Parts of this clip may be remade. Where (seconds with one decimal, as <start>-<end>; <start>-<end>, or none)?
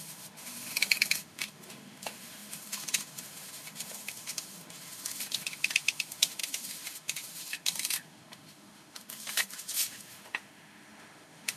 0.0-11.6